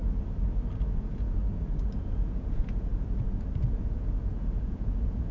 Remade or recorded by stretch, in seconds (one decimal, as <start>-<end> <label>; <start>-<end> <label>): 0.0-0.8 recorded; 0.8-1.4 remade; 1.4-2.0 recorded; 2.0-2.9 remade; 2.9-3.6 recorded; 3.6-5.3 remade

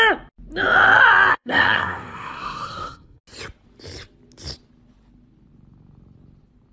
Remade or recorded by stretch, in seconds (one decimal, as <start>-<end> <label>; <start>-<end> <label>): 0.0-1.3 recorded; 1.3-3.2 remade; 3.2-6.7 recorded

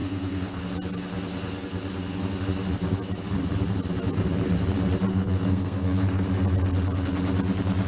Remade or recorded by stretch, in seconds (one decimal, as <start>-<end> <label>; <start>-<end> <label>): 0.0-0.6 remade; 0.6-5.1 recorded; 5.1-6.2 remade; 6.2-7.9 recorded

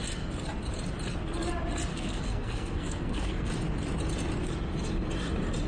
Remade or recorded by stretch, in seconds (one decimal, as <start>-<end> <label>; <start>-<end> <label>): 0.0-1.9 recorded; 1.9-3.5 remade; 3.5-5.7 recorded

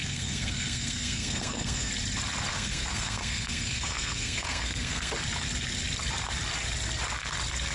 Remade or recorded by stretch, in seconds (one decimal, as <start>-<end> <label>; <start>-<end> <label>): 0.0-1.9 remade; 1.9-2.5 recorded; 2.5-5.1 remade; 5.1-7.7 recorded

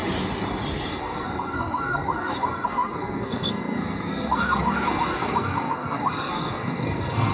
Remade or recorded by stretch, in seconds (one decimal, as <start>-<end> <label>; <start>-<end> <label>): 0.0-0.9 recorded; 0.9-7.3 remade